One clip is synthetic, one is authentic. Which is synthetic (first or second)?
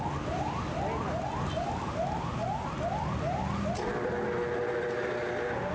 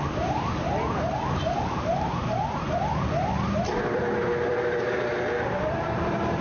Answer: second